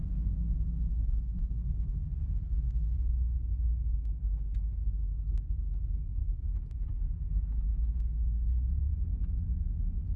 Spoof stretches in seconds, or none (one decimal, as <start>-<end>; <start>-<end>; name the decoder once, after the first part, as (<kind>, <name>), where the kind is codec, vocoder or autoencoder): 0.9-1.6 (codec, SNAC)

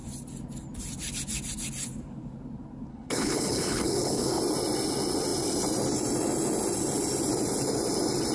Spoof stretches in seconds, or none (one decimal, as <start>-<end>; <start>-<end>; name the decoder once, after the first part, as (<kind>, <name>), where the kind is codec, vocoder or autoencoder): 2.9-4.4 (codec, HILCodec)

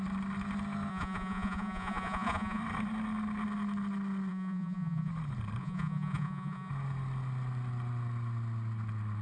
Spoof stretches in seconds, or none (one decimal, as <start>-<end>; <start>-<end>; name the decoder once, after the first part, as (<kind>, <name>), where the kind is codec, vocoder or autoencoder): 0.9-2.6 (vocoder, Vocos); 4.3-5.1; 5.6-6.7

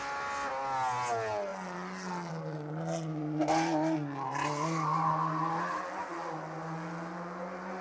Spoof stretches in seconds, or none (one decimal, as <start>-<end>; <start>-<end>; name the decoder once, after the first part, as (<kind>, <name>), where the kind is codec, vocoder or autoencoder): none

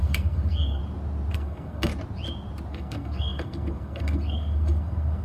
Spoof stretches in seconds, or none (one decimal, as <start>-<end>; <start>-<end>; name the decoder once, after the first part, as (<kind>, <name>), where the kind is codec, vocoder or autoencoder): 0.0-0.8 (codec, SNAC); 1.3-1.9; 2.7-5.2

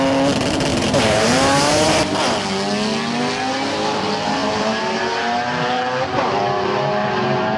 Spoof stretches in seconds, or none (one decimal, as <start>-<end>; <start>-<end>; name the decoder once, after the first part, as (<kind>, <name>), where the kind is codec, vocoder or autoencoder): 0.7-1.9 (vocoder, BigVGAN v2); 4.4-7.6

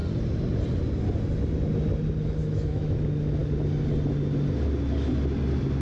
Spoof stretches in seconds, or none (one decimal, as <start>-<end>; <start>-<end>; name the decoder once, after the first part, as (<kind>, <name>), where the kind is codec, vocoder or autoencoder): 2.4-3.0 (autoencoder, DAC-VAE)